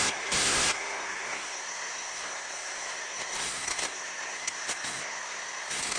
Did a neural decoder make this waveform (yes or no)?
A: yes